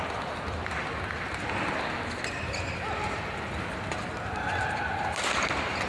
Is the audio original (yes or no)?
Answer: yes